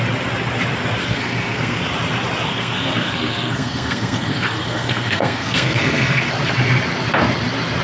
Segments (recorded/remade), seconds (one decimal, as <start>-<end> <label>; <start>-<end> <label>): 0.0-1.0 recorded; 1.0-1.8 remade; 1.8-2.5 recorded; 2.5-6.3 remade; 6.3-7.8 recorded